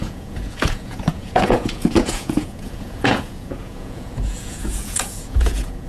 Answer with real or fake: fake